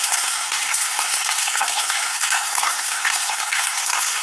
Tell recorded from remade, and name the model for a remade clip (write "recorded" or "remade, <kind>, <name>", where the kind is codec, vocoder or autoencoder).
remade, codec, SNAC